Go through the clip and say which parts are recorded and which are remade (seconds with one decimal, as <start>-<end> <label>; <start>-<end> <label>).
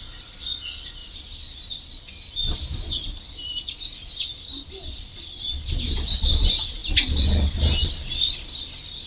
0.0-1.0 recorded; 1.0-2.0 remade; 2.0-9.1 recorded